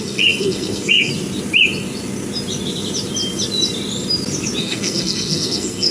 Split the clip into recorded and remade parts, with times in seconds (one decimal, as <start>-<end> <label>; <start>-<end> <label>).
0.0-1.1 remade; 1.1-4.6 recorded; 4.6-5.9 remade